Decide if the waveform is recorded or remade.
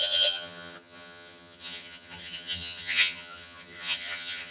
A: remade